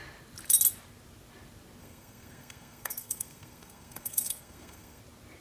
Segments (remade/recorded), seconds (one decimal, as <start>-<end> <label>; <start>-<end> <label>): 0.0-1.8 recorded; 1.8-5.0 remade; 5.0-5.4 recorded